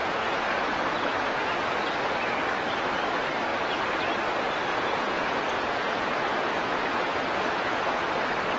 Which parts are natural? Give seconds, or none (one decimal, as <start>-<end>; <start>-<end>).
1.8-4.7; 8.1-8.6